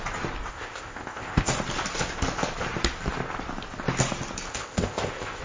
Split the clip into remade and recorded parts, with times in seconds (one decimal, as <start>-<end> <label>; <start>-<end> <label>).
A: 0.0-0.5 recorded; 0.5-1.5 remade; 1.5-4.5 recorded; 4.5-5.4 remade